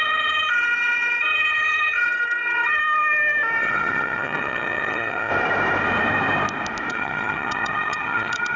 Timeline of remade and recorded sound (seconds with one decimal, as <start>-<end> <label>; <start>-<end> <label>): 0.0-2.8 remade; 2.8-3.6 recorded; 3.6-5.3 remade; 5.3-6.9 recorded; 6.9-8.6 remade